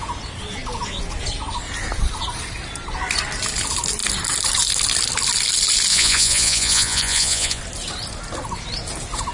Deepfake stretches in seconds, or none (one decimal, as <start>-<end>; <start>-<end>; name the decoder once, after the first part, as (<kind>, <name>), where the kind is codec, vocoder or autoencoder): 5.9-7.6 (vocoder, Vocos)